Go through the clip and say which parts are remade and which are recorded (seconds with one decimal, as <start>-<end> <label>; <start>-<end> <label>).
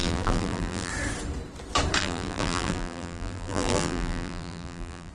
0.0-0.9 remade; 0.9-2.0 recorded; 2.0-5.1 remade